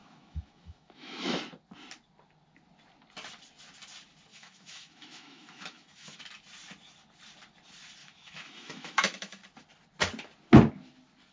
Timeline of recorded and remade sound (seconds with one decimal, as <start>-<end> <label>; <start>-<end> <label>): 0.0-1.3 remade; 1.3-4.3 recorded; 4.3-6.2 remade; 6.2-8.0 recorded; 8.0-9.4 remade; 9.4-11.3 recorded